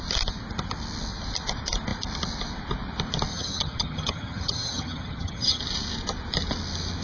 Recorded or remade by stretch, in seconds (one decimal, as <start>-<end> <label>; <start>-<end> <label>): 0.0-3.3 recorded; 3.3-5.6 remade; 5.6-7.0 recorded